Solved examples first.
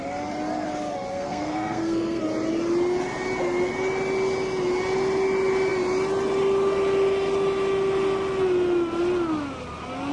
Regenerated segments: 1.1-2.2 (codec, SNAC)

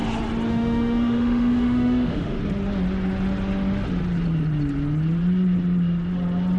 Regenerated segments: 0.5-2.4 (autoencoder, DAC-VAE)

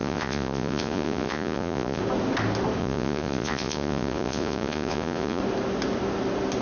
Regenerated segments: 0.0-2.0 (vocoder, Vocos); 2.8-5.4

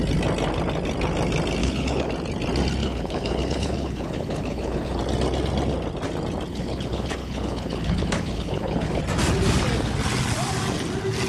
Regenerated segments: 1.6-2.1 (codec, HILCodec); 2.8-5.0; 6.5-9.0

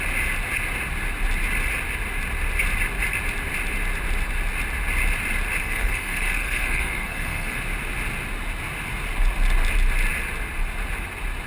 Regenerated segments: 5.6-7.6 (codec, SNAC)

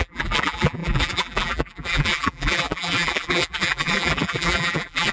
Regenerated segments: 0.0-5.1 (vocoder, BigVGAN v2)